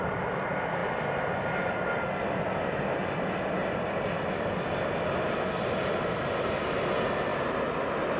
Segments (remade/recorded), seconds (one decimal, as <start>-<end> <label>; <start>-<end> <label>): 0.0-8.2 recorded